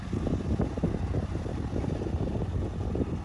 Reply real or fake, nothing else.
real